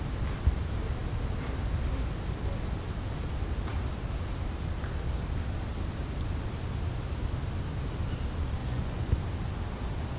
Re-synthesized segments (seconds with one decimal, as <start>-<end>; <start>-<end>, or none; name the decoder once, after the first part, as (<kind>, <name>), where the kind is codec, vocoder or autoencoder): 8.6-9.1 (vocoder, Vocos)